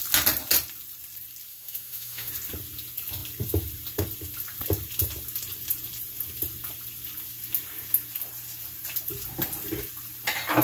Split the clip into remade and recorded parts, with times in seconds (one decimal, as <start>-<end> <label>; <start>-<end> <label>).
0.0-1.5 recorded; 1.5-2.3 remade; 2.3-10.6 recorded